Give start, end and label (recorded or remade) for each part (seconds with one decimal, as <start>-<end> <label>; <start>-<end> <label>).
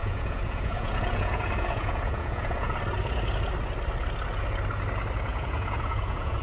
0.0-2.8 remade; 2.8-5.3 recorded; 5.3-6.4 remade